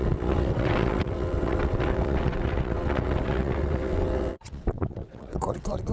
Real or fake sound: fake